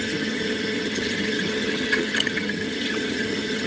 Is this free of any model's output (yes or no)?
no